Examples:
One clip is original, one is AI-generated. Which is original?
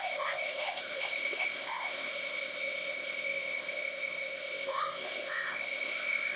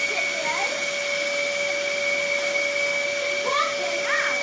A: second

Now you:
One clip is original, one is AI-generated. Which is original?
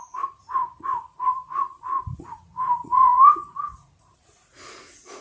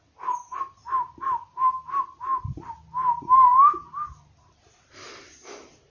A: second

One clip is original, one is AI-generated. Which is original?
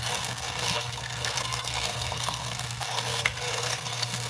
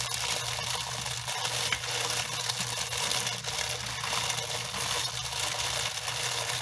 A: second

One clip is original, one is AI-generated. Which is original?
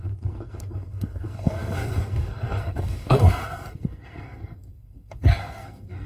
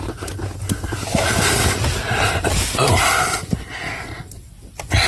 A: second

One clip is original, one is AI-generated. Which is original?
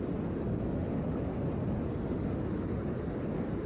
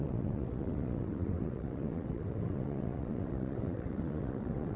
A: first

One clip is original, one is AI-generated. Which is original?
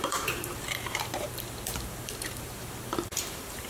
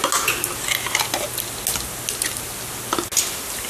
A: second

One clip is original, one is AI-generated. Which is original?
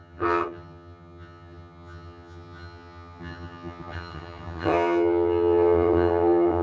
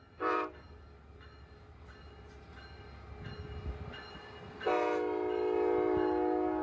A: second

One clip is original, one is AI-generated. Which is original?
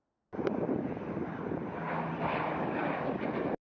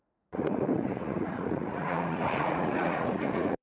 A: first